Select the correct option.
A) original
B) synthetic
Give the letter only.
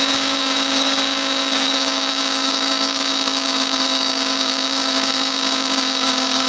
B